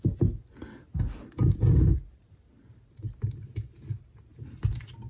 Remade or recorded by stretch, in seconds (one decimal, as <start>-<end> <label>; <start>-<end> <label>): 0.0-5.1 recorded